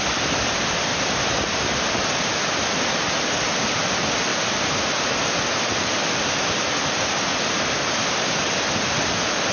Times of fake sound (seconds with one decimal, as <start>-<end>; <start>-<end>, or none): none